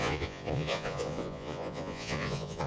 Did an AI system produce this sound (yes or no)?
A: yes